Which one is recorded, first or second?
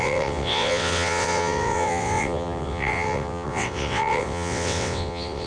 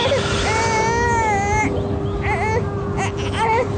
second